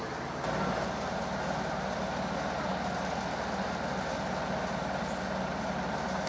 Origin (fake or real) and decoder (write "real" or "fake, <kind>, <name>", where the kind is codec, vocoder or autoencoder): real